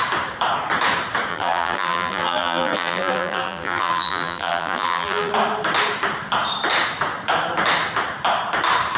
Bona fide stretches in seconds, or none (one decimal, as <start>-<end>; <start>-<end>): 0.0-1.3; 5.3-9.0